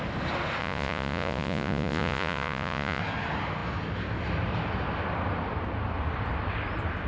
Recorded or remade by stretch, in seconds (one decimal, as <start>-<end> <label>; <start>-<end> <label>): 0.0-0.6 recorded; 0.6-3.0 remade; 3.0-7.1 recorded